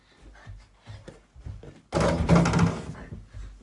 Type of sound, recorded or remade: recorded